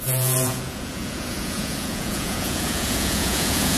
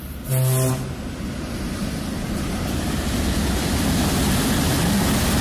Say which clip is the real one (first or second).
second